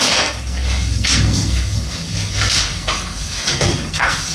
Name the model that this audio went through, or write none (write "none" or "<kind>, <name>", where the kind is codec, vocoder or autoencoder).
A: codec, SNAC